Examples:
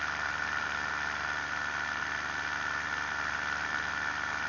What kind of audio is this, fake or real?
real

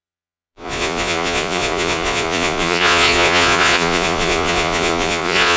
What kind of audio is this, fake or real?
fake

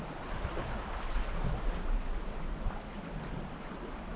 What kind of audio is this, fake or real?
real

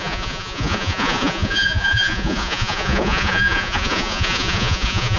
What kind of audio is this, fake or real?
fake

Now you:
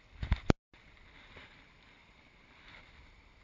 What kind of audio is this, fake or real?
real